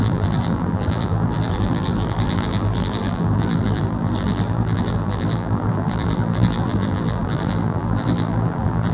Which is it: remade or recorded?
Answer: remade